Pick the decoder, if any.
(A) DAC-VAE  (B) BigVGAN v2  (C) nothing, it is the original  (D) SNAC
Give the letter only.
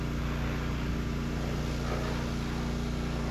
C